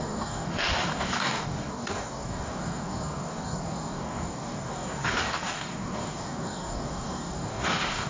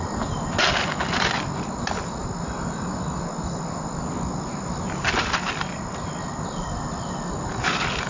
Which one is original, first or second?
second